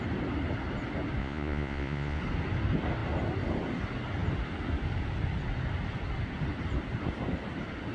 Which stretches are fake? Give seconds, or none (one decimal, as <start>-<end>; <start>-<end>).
1.2-2.2